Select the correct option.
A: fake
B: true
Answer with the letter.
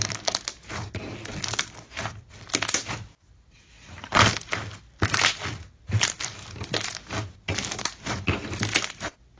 B